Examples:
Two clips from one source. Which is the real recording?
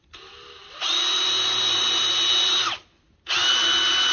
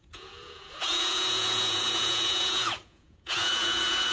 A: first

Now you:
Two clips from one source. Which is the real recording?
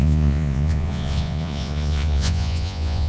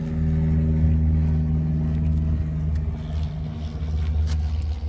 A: second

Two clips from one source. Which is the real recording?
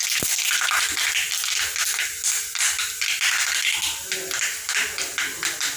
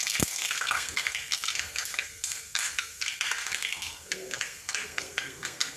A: first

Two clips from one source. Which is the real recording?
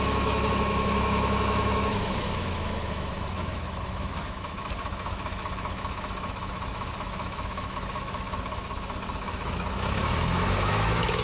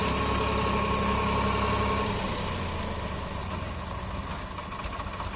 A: second